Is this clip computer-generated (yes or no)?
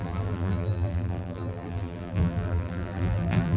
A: yes